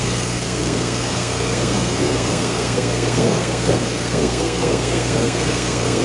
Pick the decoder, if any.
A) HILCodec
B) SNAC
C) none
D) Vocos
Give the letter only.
B